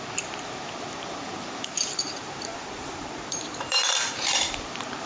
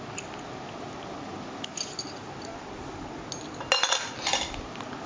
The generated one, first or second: first